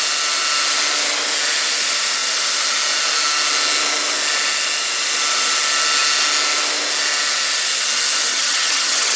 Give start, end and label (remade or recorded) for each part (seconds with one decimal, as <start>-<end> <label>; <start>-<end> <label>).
0.0-8.3 recorded; 8.3-9.2 remade